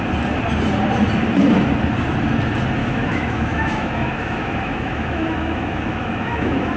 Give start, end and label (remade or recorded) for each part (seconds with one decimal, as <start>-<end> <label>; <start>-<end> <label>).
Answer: 0.0-2.8 recorded; 2.8-6.8 remade